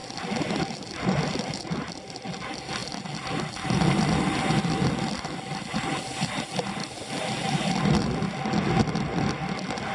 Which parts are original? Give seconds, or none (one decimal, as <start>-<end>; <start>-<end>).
0.0-9.9